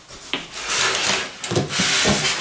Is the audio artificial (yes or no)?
no